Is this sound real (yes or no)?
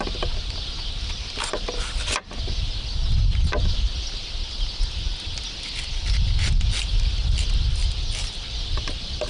yes